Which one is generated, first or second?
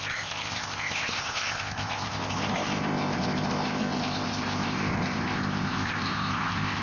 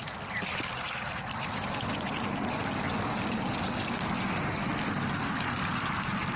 first